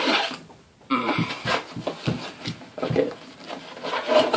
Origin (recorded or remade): recorded